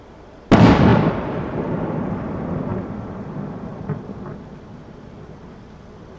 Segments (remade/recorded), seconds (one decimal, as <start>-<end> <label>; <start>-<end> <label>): 0.0-0.9 recorded; 0.9-2.1 remade; 2.1-6.2 recorded